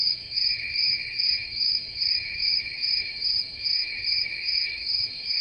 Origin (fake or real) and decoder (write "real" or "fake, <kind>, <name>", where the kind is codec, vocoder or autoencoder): fake, autoencoder, DAC-VAE